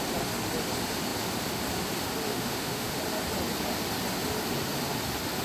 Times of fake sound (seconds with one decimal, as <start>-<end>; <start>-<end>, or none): 2.3-3.0